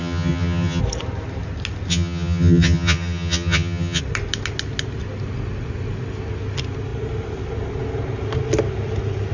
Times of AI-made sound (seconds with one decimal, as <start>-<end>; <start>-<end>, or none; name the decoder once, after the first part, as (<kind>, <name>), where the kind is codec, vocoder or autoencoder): 0.0-0.8 (vocoder, HiFi-GAN); 1.9-4.0